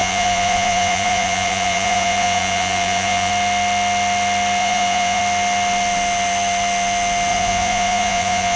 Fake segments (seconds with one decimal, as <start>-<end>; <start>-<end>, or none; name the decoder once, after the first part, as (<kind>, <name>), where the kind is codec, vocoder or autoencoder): 0.0-3.3 (vocoder, Vocos); 4.6-5.2; 7.3-8.6